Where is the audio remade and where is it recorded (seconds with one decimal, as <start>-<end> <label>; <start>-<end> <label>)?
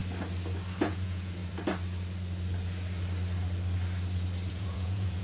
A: 0.0-0.8 recorded; 0.8-1.4 remade; 1.4-4.5 recorded; 4.5-5.2 remade